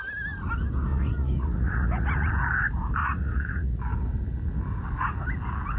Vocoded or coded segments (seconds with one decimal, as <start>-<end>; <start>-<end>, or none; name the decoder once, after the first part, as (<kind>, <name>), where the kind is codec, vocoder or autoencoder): 0.9-2.3 (vocoder, Vocos); 3.0-3.8